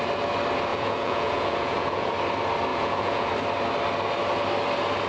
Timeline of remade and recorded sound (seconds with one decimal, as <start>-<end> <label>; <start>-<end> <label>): 0.0-0.7 recorded; 0.7-2.1 remade; 2.1-2.7 recorded; 2.7-3.3 remade; 3.3-5.1 recorded